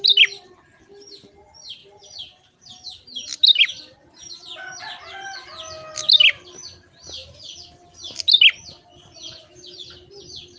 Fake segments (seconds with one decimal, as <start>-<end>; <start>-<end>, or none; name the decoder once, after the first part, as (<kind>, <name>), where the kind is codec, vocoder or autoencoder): none